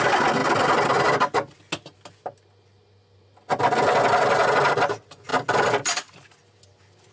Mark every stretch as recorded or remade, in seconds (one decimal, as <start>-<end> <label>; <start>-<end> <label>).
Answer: 0.0-7.1 recorded